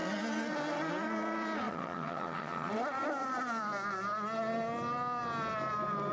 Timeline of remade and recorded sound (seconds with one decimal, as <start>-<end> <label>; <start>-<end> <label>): 0.0-1.7 recorded; 1.7-2.7 remade; 2.7-6.1 recorded